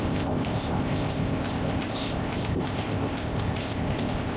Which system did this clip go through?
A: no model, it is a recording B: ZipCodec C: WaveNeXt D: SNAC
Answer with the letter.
B